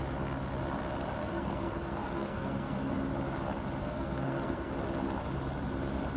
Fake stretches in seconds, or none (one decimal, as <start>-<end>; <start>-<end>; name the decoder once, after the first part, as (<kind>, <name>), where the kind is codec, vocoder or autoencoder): 1.2-2.9 (codec, SNAC); 3.8-4.7